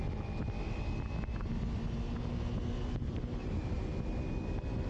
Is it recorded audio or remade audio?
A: recorded